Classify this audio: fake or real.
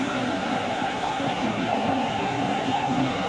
fake